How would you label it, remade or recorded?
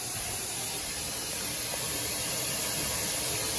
remade